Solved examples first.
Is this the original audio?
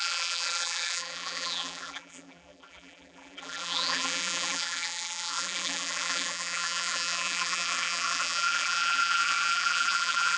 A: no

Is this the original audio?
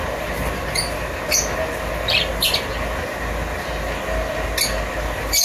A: yes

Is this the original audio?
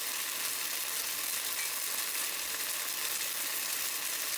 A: yes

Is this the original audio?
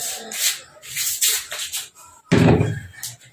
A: yes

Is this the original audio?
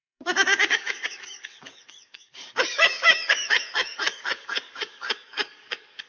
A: no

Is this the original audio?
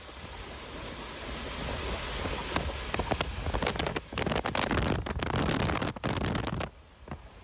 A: yes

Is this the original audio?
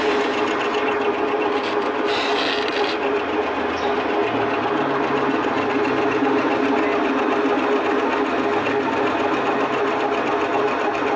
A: yes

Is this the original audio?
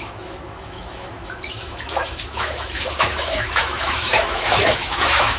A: no